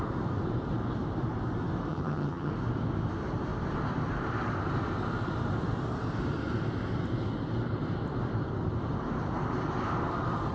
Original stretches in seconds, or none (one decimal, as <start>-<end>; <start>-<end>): 0.0-1.9; 2.5-10.5